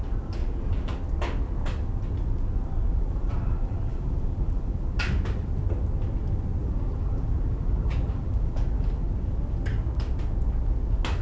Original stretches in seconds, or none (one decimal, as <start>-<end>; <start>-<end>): 0.0-0.4; 0.9-2.9; 5.0-6.6; 9.1-11.2

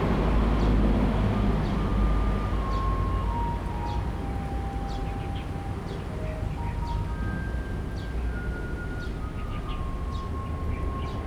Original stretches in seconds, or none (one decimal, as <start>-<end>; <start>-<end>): 0.0-11.3

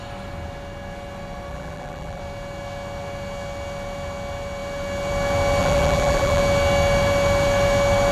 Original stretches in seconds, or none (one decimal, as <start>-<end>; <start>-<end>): 0.0-1.5; 2.2-5.6; 6.4-8.1

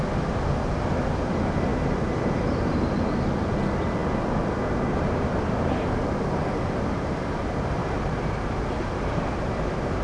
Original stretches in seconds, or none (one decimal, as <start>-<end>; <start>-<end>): 0.0-1.7; 2.8-10.0

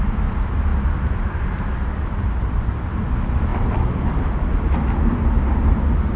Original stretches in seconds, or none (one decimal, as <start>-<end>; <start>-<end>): 0.0-0.7; 1.7-3.5; 4.2-6.2

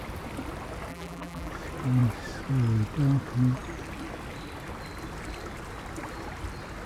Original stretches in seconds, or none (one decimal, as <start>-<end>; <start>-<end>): 0.0-0.9; 1.5-6.9

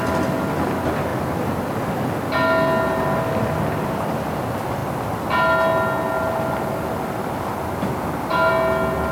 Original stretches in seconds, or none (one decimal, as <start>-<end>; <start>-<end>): 0.0-9.1

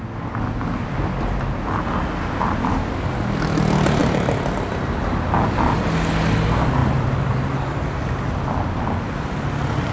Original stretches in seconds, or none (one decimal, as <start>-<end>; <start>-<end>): 0.0-6.8; 7.4-9.9